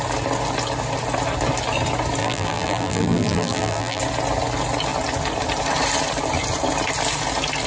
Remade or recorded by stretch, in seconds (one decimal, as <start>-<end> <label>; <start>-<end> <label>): 0.0-2.2 recorded; 2.2-4.0 remade; 4.0-7.7 recorded